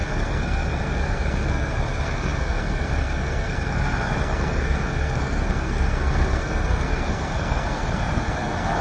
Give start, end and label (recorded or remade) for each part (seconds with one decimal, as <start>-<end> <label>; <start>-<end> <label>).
0.0-8.8 remade

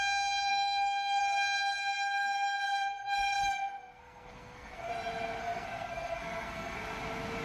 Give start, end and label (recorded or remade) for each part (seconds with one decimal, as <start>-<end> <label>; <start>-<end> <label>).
0.0-0.5 recorded; 0.5-1.2 remade; 1.2-1.8 recorded; 1.8-4.9 remade; 4.9-5.4 recorded; 5.4-6.8 remade; 6.8-7.4 recorded

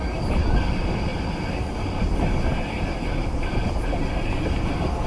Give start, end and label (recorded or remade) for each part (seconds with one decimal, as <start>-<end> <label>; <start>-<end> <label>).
0.0-5.1 recorded

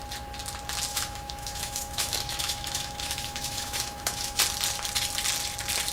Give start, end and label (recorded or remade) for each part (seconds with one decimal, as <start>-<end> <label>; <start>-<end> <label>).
0.0-0.9 recorded; 0.9-4.4 remade; 4.4-5.9 recorded

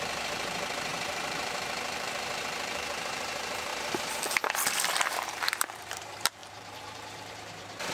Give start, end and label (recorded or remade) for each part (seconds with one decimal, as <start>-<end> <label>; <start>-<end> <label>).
0.0-3.7 remade; 3.7-5.0 recorded; 5.0-7.9 remade

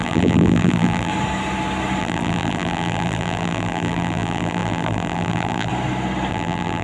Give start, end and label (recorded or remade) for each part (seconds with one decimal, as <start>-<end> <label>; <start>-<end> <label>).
0.0-1.1 remade; 1.1-2.0 recorded; 2.0-5.7 remade; 5.7-6.3 recorded; 6.3-6.8 remade

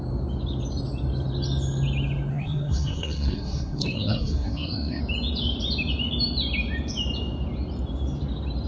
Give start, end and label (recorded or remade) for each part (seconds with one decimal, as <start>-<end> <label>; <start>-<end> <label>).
0.0-2.3 recorded; 2.3-5.0 remade; 5.0-8.7 recorded

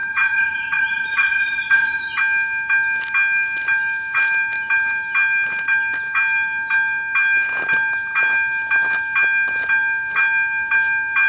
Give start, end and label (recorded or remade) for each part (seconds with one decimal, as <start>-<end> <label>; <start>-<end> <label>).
0.0-2.2 remade; 2.2-11.3 recorded